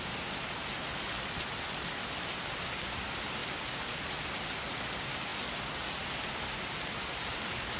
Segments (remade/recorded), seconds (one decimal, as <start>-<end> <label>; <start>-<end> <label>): 0.0-3.4 recorded; 3.4-4.0 remade; 4.0-7.8 recorded